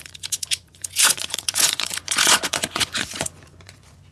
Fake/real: fake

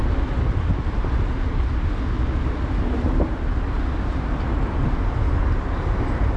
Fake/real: real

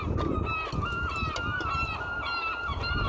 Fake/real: real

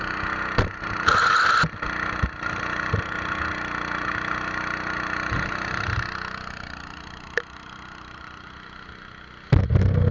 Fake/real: real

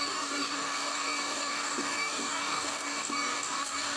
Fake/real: fake